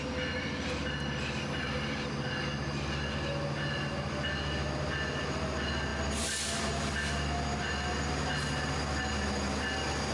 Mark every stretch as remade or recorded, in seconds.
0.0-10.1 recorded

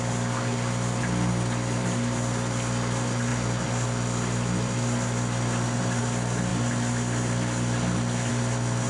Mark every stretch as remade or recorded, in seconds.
0.0-8.9 recorded

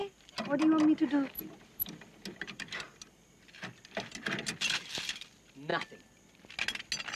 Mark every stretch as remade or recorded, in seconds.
0.0-7.2 recorded